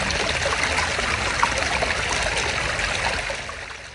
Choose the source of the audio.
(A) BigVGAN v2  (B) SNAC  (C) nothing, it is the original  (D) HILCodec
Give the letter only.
C